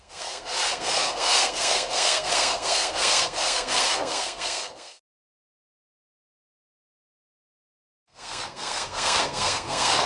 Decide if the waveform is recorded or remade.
remade